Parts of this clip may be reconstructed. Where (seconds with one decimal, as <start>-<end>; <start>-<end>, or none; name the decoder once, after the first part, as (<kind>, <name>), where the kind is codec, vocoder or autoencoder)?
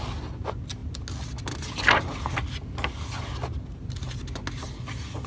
none